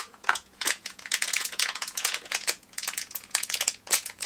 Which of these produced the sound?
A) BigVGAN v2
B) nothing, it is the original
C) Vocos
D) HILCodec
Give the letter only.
C